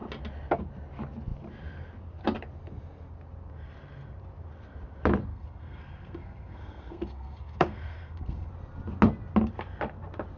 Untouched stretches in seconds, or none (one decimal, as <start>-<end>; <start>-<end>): 0.0-5.3; 8.5-10.4